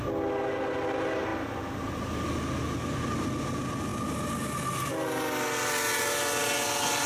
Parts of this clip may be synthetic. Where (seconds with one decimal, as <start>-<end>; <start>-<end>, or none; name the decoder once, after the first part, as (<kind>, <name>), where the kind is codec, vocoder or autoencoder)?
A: none